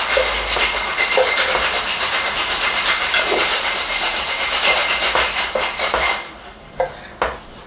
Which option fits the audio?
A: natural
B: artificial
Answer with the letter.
A